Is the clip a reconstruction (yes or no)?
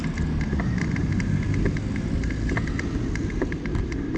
no